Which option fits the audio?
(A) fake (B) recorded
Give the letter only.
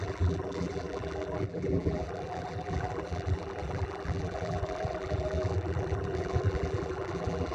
A